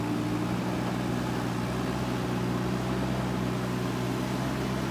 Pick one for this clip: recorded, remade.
recorded